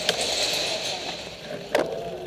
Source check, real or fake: real